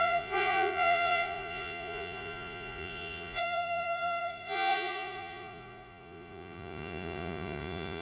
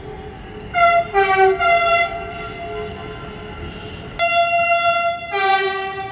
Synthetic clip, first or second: first